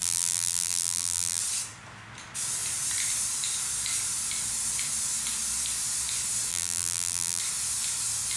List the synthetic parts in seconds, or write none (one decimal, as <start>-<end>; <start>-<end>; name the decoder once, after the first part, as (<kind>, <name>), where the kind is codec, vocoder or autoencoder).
0.0-1.4 (vocoder, BigVGAN v2); 6.5-7.4